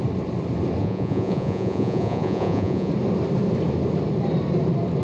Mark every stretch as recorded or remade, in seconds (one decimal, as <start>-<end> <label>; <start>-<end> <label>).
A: 0.0-0.8 recorded; 0.8-2.9 remade; 2.9-5.0 recorded